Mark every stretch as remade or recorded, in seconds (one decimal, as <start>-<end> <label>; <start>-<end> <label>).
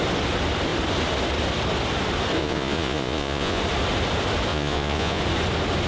0.0-2.4 recorded; 2.4-3.6 remade; 3.6-4.5 recorded; 4.5-5.2 remade; 5.2-5.9 recorded